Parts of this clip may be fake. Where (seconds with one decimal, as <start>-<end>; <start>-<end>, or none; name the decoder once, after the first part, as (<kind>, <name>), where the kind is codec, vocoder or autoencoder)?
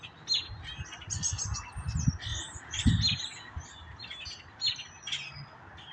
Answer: 2.3-2.9 (vocoder, BigVGAN v2)